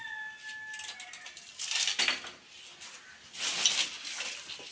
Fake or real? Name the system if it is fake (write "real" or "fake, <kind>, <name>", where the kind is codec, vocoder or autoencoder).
real